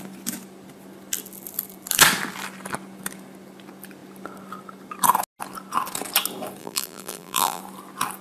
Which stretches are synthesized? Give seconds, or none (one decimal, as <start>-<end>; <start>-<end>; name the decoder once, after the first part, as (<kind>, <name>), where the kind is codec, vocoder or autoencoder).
6.6-7.6 (vocoder, BigVGAN v2)